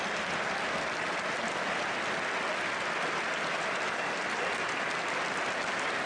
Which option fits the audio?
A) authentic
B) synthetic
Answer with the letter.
A